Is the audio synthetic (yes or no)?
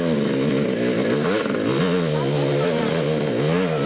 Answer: no